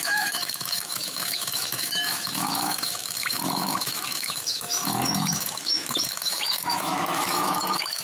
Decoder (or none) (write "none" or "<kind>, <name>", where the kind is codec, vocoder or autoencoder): autoencoder, DAC-VAE